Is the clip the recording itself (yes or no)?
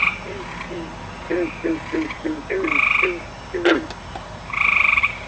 yes